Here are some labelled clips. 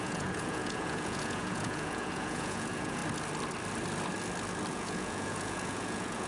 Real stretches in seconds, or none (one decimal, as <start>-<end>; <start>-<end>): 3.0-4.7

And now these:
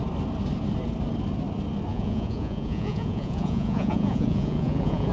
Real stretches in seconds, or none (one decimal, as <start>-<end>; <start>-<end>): 0.0-1.9

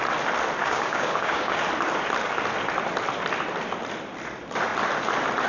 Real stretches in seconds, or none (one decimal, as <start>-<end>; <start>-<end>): 0.0-0.6; 1.6-5.5

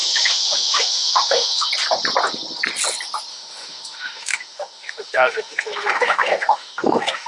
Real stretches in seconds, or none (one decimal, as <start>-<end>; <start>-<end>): 1.7-3.3

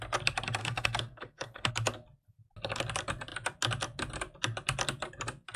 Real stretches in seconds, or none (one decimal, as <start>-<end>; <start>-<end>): 0.0-0.6; 1.7-5.6